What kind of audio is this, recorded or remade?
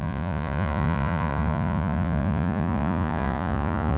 remade